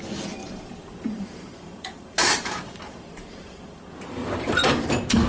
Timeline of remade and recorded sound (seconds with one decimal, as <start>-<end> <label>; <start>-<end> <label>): 0.0-0.4 recorded; 0.4-3.6 remade; 3.6-4.2 recorded; 4.2-5.3 remade